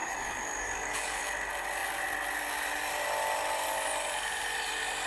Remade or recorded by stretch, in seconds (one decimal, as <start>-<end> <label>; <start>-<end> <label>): 0.0-1.2 remade; 1.2-5.1 recorded